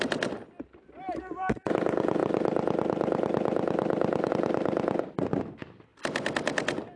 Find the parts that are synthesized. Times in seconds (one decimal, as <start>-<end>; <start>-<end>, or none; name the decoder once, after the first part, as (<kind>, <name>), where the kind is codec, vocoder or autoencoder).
2.2-4.3 (vocoder, BigVGAN v2); 5.9-7.0